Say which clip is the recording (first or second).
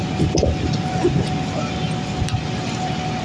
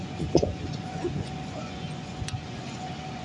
first